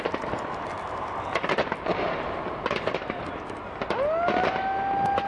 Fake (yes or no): no